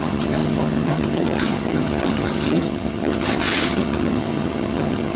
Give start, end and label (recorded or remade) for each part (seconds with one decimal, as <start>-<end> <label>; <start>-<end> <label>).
0.0-5.2 remade